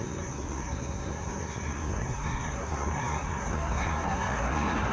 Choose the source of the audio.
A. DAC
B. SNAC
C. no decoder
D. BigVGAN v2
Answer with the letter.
B